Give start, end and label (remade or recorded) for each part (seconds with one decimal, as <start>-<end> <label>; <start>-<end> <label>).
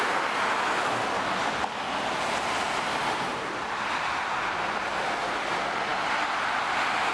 0.0-7.1 recorded